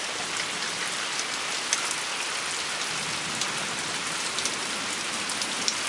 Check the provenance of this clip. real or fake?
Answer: real